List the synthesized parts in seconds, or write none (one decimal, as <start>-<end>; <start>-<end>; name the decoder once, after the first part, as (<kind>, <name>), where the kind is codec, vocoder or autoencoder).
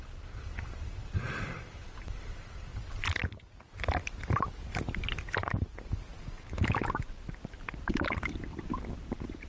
0.0-2.7 (vocoder, BigVGAN v2); 7.9-9.5